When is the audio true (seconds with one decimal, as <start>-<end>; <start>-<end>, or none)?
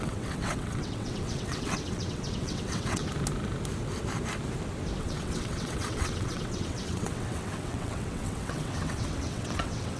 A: 3.0-5.0